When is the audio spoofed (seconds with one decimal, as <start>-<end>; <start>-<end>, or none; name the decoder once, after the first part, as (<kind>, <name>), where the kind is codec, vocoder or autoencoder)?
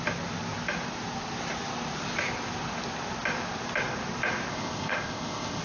4.5-5.6 (codec, ZipCodec)